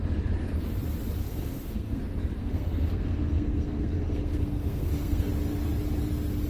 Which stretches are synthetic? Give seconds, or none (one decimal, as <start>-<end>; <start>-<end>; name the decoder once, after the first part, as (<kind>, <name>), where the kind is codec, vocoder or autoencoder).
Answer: 1.2-2.0 (codec, SNAC); 2.4-5.3